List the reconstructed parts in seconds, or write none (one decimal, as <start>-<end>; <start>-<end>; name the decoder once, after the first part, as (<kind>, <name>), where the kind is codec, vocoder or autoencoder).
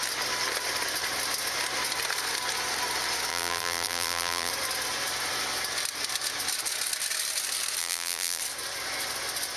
3.3-4.5 (vocoder, BigVGAN v2); 7.8-8.4